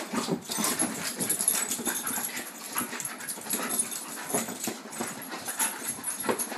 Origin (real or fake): fake